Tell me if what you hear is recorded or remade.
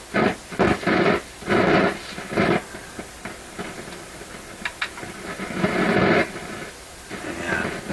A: recorded